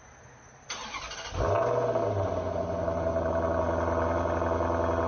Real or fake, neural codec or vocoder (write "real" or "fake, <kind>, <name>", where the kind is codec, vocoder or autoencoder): real